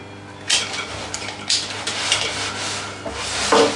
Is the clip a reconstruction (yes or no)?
no